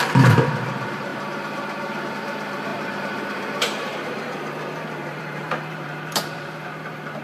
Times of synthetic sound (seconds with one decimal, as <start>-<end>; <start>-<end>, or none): 0.0-7.2

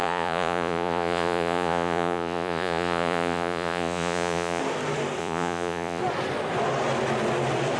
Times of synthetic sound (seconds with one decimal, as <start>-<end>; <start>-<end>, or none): 0.0-4.6; 5.2-6.0

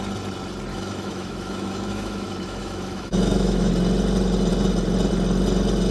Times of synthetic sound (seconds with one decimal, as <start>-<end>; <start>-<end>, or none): 0.7-3.7

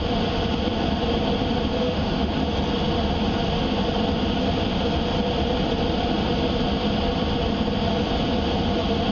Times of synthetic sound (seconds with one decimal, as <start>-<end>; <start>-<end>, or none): 1.7-2.3

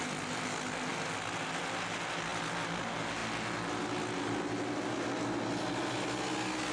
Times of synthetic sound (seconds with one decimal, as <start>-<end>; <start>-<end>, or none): none